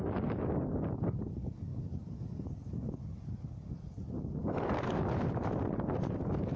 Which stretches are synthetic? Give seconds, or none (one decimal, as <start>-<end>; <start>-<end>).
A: none